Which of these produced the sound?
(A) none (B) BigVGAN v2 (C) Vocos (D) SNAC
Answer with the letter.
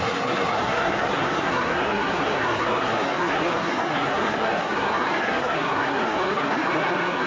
D